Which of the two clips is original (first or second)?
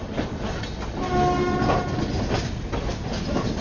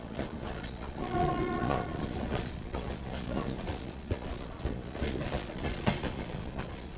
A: first